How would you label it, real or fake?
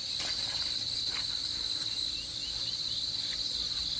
real